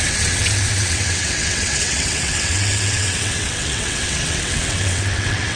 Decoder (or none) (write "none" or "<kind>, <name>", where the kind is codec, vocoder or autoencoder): vocoder, WaveNeXt